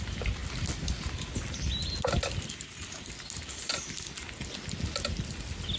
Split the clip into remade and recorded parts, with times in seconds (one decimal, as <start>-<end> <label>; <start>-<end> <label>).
0.0-5.8 recorded